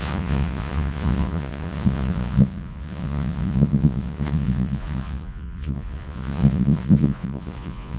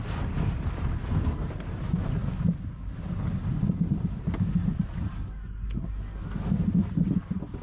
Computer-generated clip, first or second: first